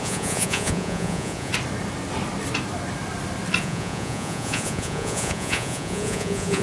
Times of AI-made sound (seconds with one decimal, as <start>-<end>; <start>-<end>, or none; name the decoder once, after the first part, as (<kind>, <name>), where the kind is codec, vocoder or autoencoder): 0.0-1.5 (vocoder, Vocos); 3.6-6.6